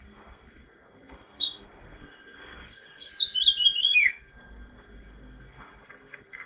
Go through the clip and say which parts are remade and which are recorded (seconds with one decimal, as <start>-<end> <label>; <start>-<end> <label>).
0.0-3.1 remade; 3.1-3.8 recorded; 3.8-6.5 remade